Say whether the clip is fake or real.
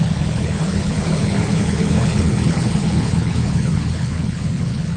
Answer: fake